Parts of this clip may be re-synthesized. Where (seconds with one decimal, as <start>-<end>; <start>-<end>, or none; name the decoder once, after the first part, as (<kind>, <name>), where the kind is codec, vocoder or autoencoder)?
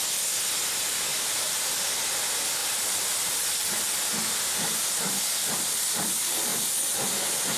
1.1-1.7 (vocoder, BigVGAN v2)